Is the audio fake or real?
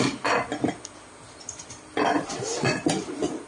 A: real